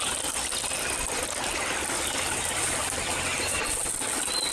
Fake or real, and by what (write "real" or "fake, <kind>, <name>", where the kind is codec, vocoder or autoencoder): real